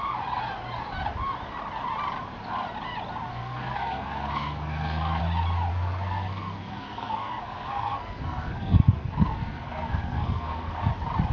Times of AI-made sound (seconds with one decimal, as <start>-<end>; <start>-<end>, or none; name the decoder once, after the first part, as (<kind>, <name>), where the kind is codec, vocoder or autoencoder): 3.3-5.2 (codec, SNAC); 5.7-10.9